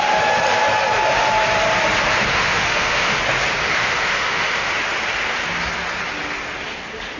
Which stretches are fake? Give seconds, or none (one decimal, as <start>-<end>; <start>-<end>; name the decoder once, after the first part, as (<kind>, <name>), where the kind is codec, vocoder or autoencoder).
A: 2.3-3.2 (autoencoder, DAC-VAE); 3.6-4.7